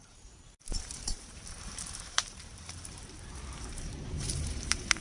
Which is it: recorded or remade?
remade